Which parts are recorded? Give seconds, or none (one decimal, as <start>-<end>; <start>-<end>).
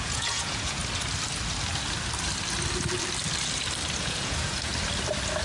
0.8-4.0; 4.7-5.4